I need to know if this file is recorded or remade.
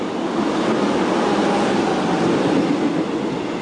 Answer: recorded